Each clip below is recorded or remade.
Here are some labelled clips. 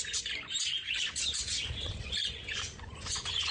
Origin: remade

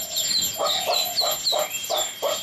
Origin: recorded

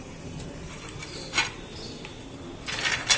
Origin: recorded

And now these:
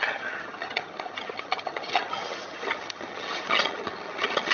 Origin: remade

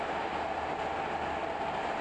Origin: recorded